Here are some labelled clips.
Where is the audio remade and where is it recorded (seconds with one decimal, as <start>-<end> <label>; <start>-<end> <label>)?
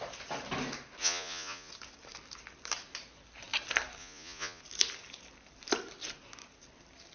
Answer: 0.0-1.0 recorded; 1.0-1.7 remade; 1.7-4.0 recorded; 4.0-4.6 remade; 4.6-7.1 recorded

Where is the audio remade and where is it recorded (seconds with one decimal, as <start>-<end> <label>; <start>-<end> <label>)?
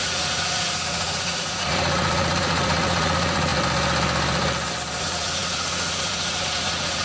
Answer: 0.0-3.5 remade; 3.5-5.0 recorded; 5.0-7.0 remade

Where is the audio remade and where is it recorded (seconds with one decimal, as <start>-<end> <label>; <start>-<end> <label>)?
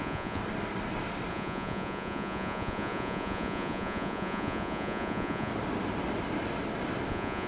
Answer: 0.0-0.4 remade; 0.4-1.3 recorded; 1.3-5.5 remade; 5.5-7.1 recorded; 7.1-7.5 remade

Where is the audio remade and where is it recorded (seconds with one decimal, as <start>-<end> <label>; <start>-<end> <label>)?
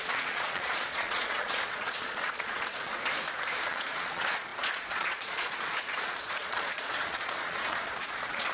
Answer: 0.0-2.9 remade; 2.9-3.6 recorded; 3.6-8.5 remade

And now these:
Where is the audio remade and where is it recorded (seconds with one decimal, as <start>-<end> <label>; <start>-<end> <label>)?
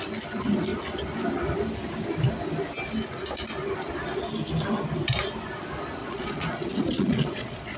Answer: 0.0-6.0 recorded; 6.0-7.8 remade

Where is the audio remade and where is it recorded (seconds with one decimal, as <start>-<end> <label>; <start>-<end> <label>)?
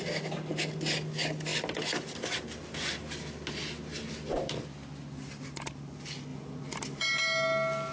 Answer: 0.0-7.9 recorded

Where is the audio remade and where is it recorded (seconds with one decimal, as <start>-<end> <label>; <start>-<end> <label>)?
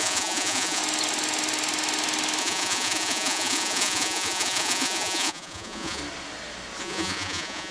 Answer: 0.0-0.8 remade; 0.8-2.4 recorded; 2.4-6.0 remade; 6.0-6.8 recorded; 6.8-7.7 remade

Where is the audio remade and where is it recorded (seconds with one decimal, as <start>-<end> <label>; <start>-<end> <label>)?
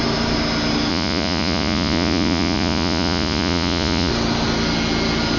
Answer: 0.0-0.9 recorded; 0.9-4.1 remade; 4.1-5.4 recorded